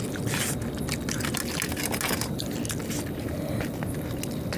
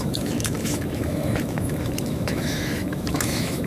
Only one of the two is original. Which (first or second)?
first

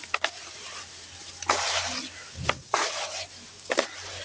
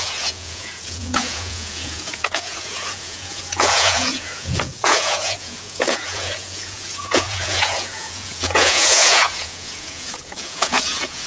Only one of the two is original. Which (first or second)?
first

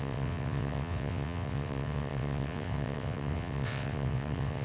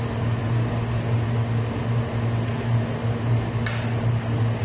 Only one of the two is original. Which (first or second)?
second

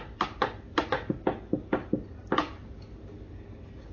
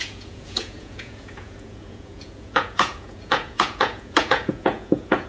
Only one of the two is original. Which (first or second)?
first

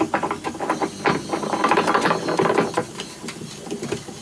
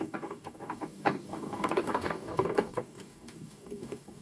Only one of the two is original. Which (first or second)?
first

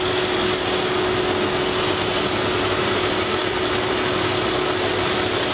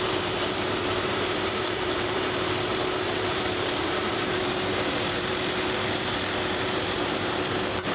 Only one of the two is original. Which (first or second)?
first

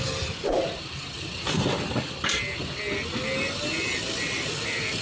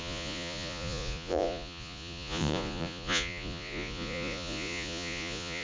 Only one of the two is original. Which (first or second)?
first